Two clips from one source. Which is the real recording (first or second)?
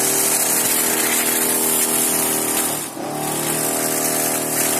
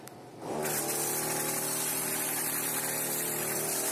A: first